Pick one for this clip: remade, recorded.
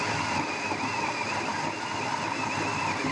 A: recorded